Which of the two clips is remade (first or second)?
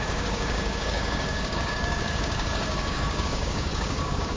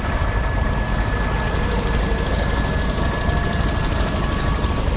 first